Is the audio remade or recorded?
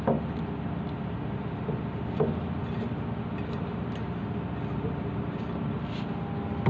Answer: recorded